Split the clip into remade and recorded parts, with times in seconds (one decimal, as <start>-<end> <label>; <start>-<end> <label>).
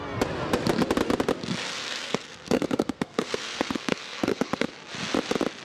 0.0-1.7 recorded; 1.7-4.7 remade; 4.7-5.6 recorded